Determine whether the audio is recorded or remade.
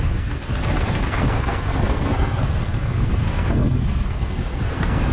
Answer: remade